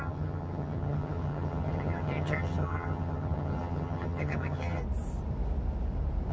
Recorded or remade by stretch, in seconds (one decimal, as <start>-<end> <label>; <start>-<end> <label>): 0.0-4.8 remade; 4.8-6.3 recorded